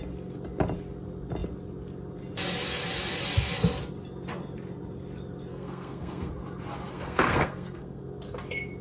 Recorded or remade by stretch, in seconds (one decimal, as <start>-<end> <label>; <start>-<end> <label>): 0.0-5.5 recorded; 5.5-6.3 remade; 6.3-6.9 recorded; 6.9-8.0 remade; 8.0-8.8 recorded